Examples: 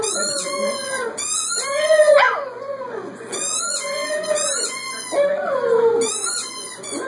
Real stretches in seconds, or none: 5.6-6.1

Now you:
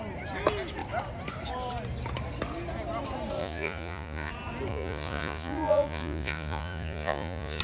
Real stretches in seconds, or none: 0.0-3.4; 4.3-4.7

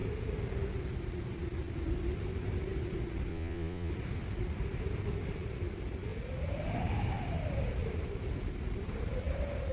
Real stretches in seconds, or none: 0.0-3.3; 3.9-9.7

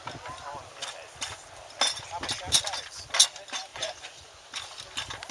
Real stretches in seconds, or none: 0.0-3.7; 4.4-5.3